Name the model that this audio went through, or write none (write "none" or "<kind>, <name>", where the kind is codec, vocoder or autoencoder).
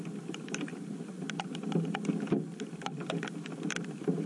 none